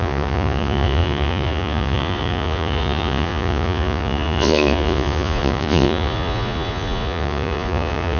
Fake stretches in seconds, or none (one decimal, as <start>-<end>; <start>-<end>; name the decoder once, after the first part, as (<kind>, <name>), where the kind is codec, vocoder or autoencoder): 0.0-8.2 (vocoder, Vocos)